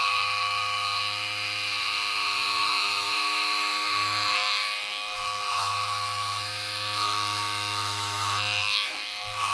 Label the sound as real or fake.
fake